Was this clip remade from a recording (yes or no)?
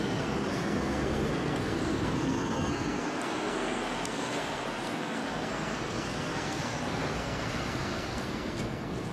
yes